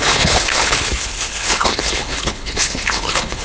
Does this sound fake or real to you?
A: fake